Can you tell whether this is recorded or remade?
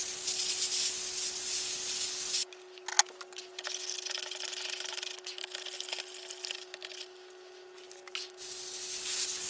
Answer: recorded